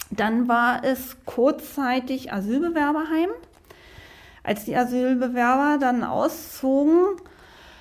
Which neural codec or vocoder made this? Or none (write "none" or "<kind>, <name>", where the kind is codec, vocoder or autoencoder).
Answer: none